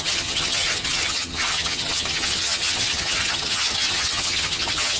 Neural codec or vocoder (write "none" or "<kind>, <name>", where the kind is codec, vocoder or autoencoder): vocoder, HiFi-GAN